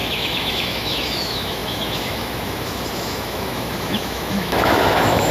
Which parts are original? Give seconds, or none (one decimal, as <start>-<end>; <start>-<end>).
none